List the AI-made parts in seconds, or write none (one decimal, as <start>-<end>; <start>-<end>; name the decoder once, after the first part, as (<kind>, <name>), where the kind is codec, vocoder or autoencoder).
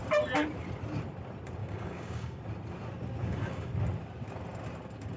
1.6-2.4 (codec, DAC); 3.2-3.7